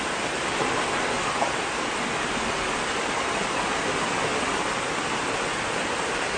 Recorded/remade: recorded